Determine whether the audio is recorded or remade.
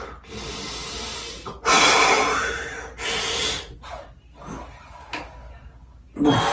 recorded